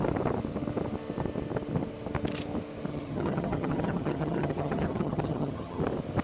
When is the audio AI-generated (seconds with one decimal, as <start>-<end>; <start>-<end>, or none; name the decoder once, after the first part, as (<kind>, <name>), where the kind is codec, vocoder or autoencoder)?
2.9-5.8 (vocoder, HiFi-GAN)